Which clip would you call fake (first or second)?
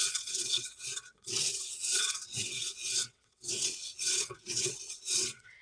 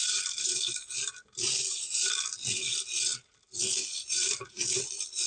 first